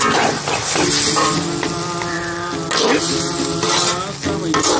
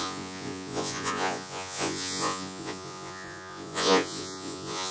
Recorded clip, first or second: first